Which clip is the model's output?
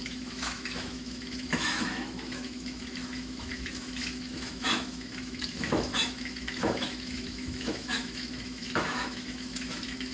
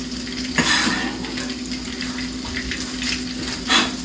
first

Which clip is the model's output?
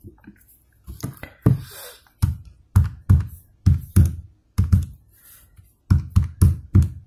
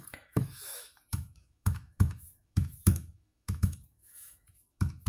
second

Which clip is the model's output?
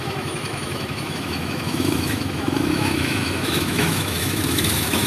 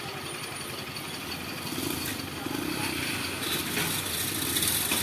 first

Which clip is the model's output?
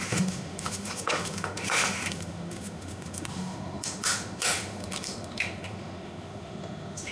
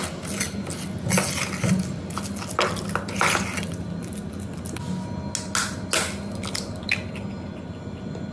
first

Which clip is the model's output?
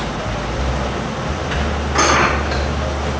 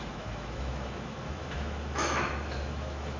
second